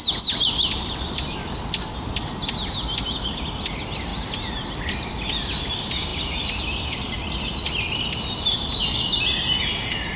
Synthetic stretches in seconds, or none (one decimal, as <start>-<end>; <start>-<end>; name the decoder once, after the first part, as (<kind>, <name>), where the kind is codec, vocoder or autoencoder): none